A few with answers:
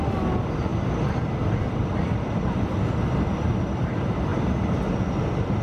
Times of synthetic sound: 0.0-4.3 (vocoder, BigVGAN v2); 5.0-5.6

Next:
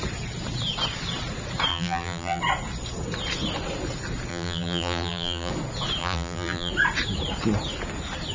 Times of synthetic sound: 1.7-2.4 (vocoder, BigVGAN v2); 4.3-5.5; 6.0-6.7

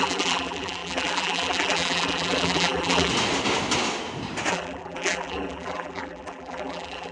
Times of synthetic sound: 0.0-3.1 (vocoder, BigVGAN v2); 4.5-7.1

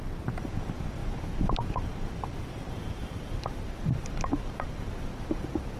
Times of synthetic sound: 1.0-2.1 (vocoder, BigVGAN v2); 3.0-5.0